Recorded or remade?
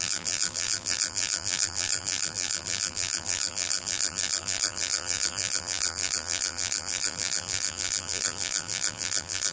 remade